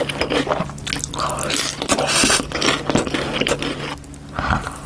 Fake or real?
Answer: real